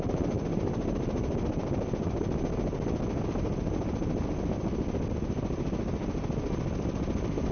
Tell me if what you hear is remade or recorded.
recorded